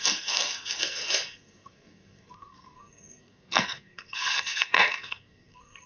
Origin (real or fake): fake